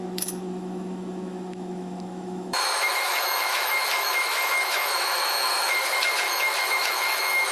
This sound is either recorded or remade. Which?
remade